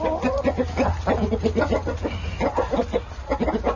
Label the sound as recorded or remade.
recorded